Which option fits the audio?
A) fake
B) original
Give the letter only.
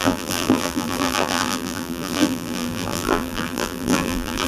A